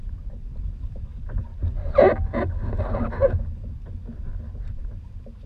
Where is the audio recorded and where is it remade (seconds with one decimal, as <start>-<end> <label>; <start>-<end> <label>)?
0.0-5.5 recorded